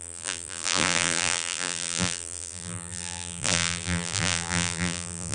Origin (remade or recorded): remade